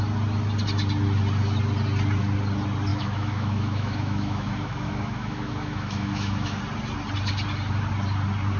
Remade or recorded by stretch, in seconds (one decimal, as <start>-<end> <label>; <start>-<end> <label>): 0.0-2.9 recorded; 2.9-6.6 remade; 6.6-8.6 recorded

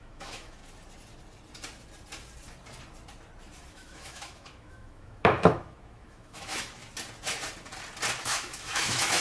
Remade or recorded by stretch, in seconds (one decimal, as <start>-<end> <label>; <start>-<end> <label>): 0.0-0.6 remade; 0.6-3.7 recorded; 3.7-6.8 remade; 6.8-8.2 recorded; 8.2-9.2 remade

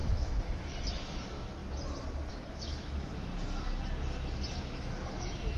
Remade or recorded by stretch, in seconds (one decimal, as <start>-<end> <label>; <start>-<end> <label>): 0.0-1.6 remade; 1.6-2.3 recorded; 2.3-3.3 remade; 3.3-4.6 recorded; 4.6-5.6 remade

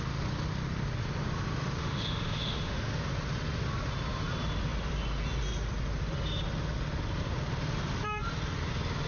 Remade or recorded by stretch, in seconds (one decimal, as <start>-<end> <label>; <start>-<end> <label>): 0.0-1.8 recorded; 1.8-2.8 remade; 2.8-9.1 recorded

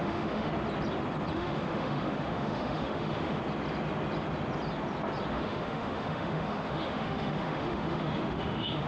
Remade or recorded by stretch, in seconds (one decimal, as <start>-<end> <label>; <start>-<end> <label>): 0.0-0.5 remade; 0.5-1.3 recorded; 1.3-3.4 remade; 3.4-5.3 recorded; 5.3-8.9 remade

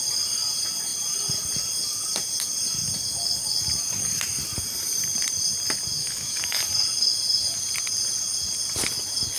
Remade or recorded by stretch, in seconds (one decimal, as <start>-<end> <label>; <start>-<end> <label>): 0.0-6.0 recorded; 6.0-6.6 remade; 6.6-9.4 recorded